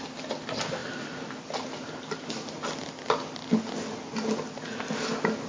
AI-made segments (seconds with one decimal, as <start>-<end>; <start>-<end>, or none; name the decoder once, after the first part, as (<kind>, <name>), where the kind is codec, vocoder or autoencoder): none